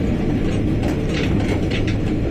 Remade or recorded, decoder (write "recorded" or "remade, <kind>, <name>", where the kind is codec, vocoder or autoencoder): remade, vocoder, BigVGAN v2